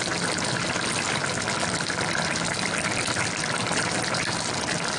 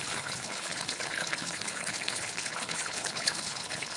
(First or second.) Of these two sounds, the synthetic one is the second